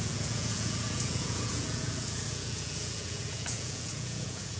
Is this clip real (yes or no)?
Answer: no